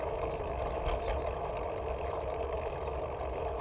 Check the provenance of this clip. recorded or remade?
recorded